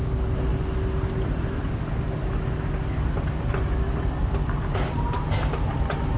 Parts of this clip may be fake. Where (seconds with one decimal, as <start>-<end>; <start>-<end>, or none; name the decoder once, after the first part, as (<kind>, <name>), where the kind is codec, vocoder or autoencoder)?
none